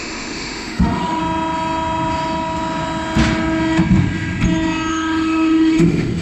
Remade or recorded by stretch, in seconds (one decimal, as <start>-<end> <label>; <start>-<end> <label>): 0.0-1.2 remade; 1.2-4.9 recorded; 4.9-6.2 remade

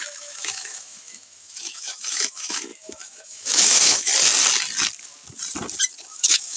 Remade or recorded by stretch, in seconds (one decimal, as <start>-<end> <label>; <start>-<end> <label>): 0.0-4.1 remade; 4.1-6.0 recorded; 6.0-6.6 remade

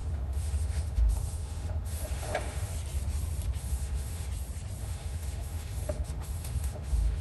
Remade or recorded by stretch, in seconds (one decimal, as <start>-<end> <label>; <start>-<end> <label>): 0.0-2.7 remade; 2.7-3.6 recorded; 3.6-4.3 remade; 4.3-4.8 recorded; 4.8-7.2 remade

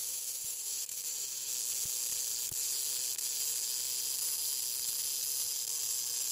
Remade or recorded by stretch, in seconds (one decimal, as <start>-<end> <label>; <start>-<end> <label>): 0.0-1.5 remade; 1.5-6.3 recorded

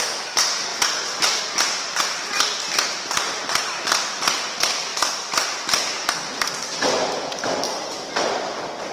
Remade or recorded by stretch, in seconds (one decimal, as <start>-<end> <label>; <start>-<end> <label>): 0.0-8.9 recorded

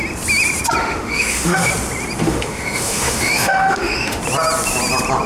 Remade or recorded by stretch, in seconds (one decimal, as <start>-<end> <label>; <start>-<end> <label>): 0.0-0.8 recorded; 0.8-1.7 remade; 1.7-2.2 recorded; 2.2-4.2 remade; 4.2-5.3 recorded

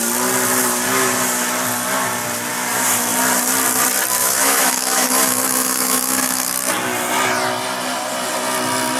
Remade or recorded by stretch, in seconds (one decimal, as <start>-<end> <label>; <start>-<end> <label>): 0.0-4.2 recorded; 4.2-6.7 remade; 6.7-9.0 recorded